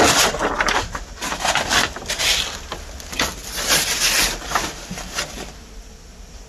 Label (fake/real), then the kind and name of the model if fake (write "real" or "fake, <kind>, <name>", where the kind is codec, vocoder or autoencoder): real